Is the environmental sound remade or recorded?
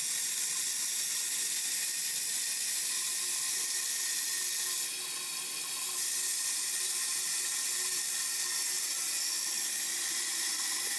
recorded